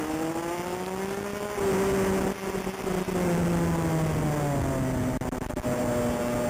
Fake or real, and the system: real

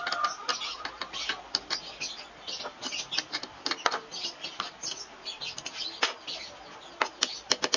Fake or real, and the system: real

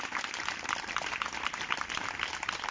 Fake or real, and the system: real